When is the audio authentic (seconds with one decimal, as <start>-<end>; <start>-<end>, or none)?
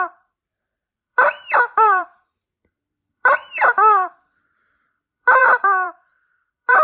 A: none